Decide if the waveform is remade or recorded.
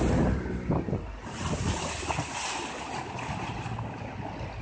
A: recorded